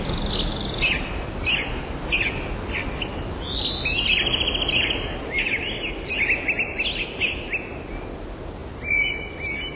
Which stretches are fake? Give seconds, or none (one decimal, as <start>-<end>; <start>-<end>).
none